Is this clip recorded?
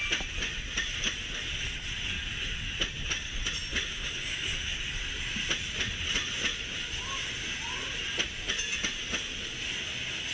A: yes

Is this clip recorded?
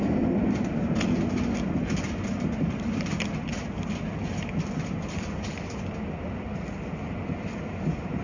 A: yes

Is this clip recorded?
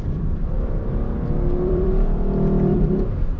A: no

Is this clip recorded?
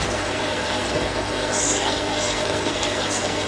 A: no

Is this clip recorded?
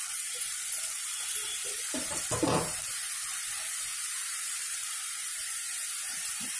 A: no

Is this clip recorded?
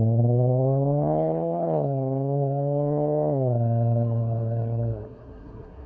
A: no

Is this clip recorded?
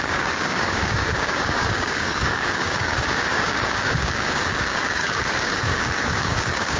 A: no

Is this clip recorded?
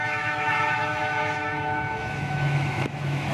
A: no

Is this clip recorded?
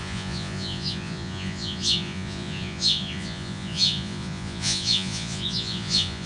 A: no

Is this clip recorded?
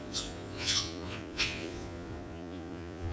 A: no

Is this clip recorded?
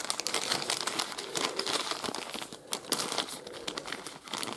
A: yes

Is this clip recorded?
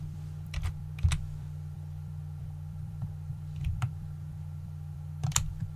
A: no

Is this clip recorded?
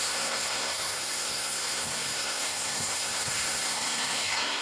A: no